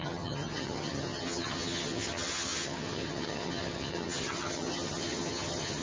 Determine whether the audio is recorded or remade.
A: remade